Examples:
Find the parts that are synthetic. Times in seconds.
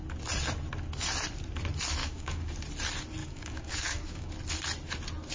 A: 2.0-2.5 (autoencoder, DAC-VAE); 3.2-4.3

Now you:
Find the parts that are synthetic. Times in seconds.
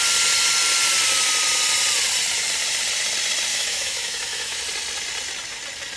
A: 3.5-4.6 (autoencoder, DAC-VAE)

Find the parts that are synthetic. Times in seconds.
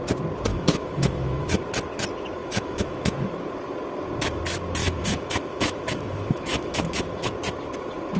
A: 0.5-1.6 (autoencoder, DAC-VAE); 2.4-3.3; 4.8-7.3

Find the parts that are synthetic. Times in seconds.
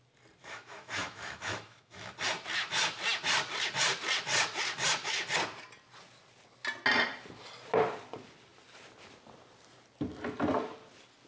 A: 0.4-2.1 (autoencoder, DAC-VAE)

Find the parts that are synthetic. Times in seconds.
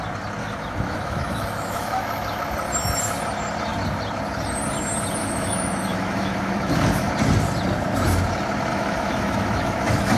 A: 0.4-2.4 (autoencoder, DAC-VAE); 5.2-7.1; 8.7-10.2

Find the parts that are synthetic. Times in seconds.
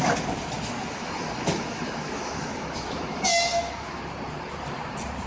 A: 0.8-4.0 (autoencoder, DAC-VAE)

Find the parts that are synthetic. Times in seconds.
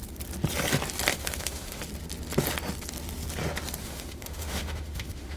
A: 1.1-1.8 (autoencoder, DAC-VAE); 3.8-5.4